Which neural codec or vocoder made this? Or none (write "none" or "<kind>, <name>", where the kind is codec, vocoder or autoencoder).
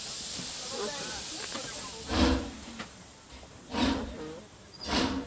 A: none